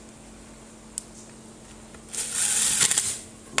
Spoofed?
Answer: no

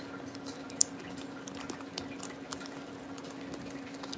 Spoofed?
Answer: no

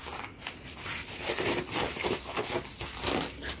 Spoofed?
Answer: no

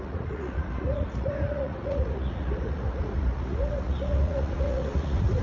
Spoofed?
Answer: yes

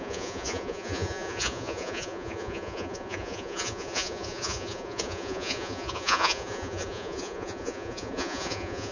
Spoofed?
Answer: yes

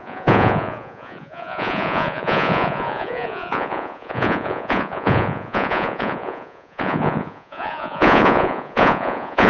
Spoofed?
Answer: yes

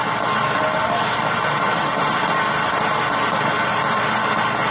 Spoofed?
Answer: no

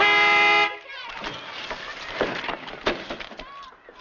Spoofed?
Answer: no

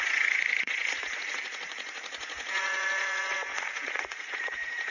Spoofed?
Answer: yes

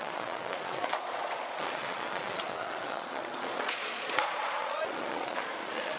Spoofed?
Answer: yes